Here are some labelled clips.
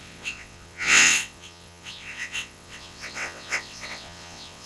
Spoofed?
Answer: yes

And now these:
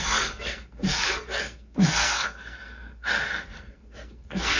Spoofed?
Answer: yes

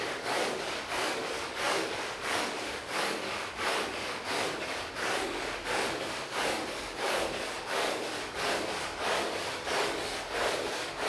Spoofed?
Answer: yes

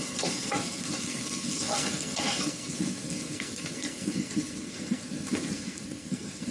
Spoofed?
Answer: yes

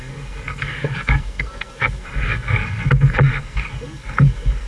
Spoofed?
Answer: yes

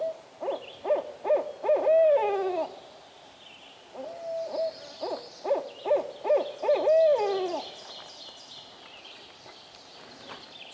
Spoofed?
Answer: no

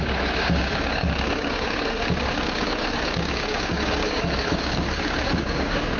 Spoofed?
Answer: yes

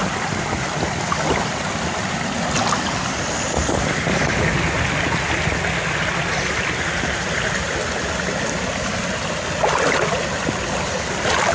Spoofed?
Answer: no